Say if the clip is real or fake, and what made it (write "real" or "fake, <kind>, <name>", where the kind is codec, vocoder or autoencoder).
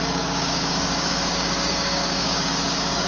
fake, codec, DAC